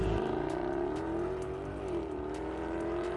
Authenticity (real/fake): fake